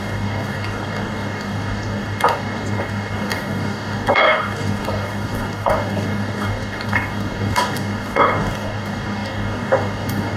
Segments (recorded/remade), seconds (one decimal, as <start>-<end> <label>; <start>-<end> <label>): 0.0-10.4 remade